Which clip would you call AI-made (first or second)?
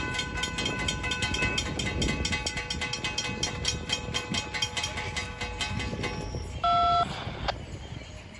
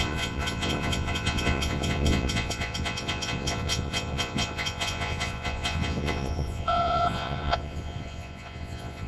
second